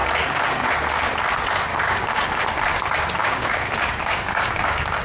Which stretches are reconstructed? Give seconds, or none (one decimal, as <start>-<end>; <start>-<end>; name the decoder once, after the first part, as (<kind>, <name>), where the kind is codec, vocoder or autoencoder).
0.0-0.7 (codec, DAC); 1.7-2.4; 3.2-5.0